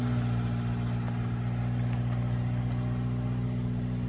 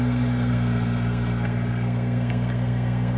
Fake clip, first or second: second